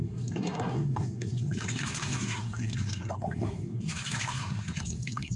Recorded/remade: remade